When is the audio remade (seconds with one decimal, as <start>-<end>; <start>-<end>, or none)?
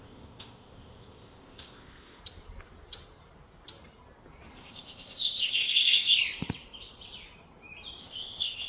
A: 0.0-2.2; 4.6-6.2; 8.0-8.7